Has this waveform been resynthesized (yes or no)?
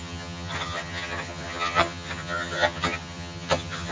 yes